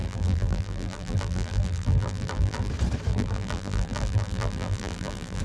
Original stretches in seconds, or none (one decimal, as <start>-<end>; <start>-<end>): 2.7-3.1